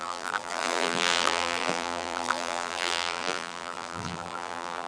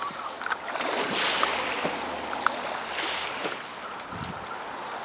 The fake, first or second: first